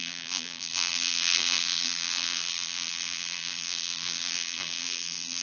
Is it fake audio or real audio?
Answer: fake